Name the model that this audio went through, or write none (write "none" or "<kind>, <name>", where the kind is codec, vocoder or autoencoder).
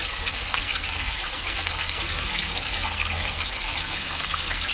codec, SNAC